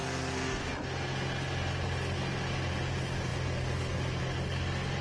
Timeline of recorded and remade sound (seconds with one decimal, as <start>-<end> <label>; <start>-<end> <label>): 0.0-0.7 remade; 0.7-5.0 recorded